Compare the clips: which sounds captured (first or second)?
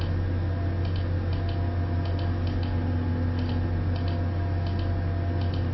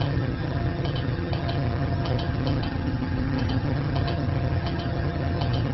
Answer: first